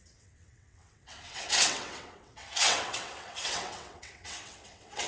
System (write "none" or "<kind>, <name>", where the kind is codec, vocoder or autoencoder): vocoder, WaveNeXt